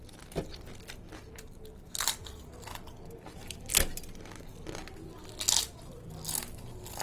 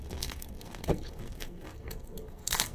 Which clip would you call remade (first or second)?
second